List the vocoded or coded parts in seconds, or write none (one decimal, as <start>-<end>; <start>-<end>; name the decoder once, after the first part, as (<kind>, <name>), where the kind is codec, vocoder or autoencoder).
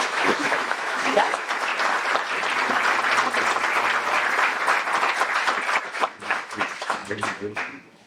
0.0-1.7 (autoencoder, DAC-VAE); 5.8-8.1